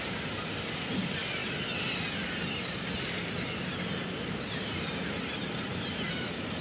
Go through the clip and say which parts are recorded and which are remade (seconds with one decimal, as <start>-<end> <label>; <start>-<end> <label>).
0.0-6.6 recorded